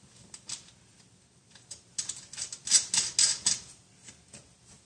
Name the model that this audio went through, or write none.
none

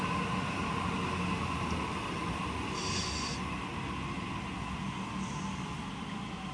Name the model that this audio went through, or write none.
none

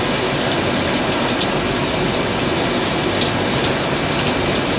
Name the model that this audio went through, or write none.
none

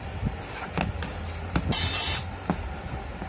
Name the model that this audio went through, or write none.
none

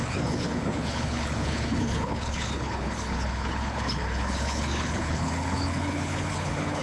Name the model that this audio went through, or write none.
codec, HILCodec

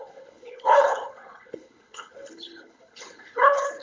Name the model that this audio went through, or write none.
codec, HILCodec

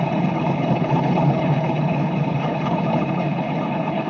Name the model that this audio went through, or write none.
codec, HILCodec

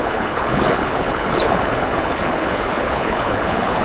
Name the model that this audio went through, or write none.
codec, HILCodec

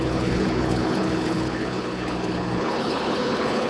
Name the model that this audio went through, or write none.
codec, HILCodec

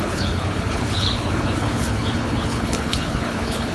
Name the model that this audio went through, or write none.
codec, HILCodec